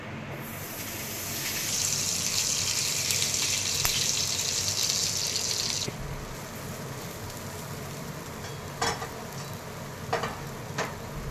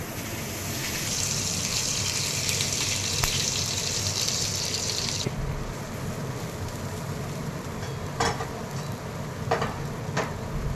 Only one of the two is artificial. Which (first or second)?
second